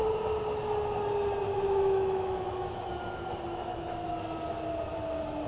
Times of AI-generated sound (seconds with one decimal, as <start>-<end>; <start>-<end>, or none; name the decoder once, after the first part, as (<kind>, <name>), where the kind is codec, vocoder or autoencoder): 1.5-2.9 (autoencoder, DAC-VAE); 3.5-4.1